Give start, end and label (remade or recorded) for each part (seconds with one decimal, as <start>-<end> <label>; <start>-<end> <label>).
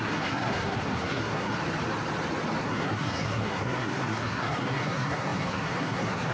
0.0-1.6 remade; 1.6-2.6 recorded; 2.6-6.3 remade